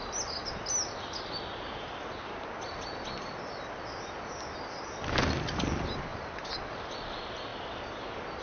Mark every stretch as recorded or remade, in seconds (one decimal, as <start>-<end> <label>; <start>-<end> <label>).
0.0-6.1 recorded; 6.1-6.7 remade; 6.7-8.4 recorded